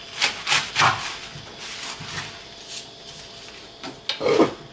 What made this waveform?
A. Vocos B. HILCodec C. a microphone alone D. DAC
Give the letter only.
C